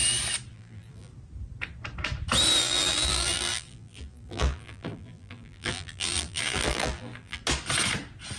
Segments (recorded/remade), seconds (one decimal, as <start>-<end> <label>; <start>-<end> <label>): 0.0-0.5 recorded; 0.5-1.1 remade; 1.1-2.6 recorded; 2.6-7.4 remade; 7.4-8.4 recorded